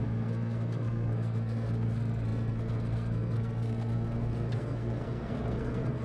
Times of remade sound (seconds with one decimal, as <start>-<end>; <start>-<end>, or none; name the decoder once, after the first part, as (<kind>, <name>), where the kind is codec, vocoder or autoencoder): 0.0-6.0 (codec, SNAC)